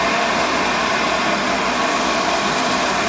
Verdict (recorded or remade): remade